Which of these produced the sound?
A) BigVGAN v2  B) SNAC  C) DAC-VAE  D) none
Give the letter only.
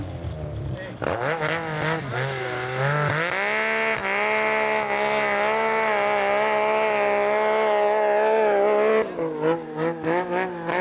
D